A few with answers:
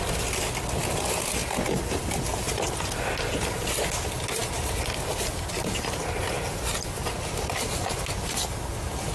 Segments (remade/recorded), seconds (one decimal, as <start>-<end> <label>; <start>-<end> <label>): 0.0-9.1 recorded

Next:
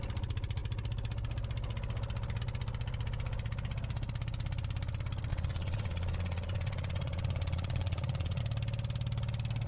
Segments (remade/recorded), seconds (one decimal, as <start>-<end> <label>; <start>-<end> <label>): 0.0-5.3 recorded; 5.3-8.4 remade; 8.4-9.7 recorded

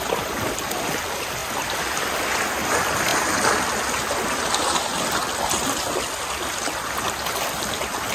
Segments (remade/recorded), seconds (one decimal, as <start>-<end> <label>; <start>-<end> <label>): 0.0-8.1 recorded

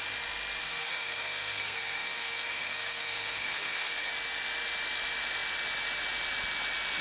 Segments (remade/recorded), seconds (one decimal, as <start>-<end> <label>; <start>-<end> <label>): 0.0-0.6 recorded; 0.6-4.1 remade; 4.1-7.0 recorded

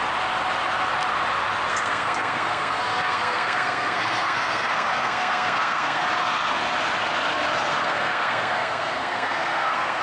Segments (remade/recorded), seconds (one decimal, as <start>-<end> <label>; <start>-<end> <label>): 0.0-1.7 recorded; 1.7-6.0 remade; 6.0-7.7 recorded; 7.7-10.0 remade

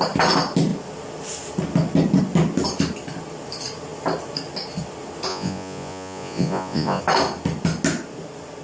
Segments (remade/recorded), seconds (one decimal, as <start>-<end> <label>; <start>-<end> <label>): 0.0-5.3 recorded; 5.3-7.0 remade; 7.0-8.6 recorded